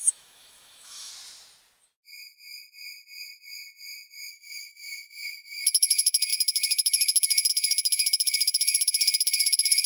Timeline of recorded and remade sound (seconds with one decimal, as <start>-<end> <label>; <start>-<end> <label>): 0.0-1.1 remade; 1.1-4.3 recorded; 4.3-9.9 remade